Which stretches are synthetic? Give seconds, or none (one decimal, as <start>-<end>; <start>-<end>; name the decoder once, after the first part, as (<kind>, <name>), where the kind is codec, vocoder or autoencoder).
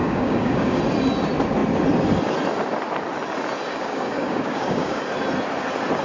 0.0-0.8 (codec, DAC); 3.7-5.0